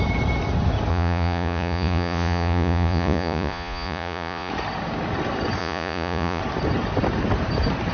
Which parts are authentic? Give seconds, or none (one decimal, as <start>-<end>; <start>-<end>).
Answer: 0.0-0.9; 4.5-5.6; 6.4-7.9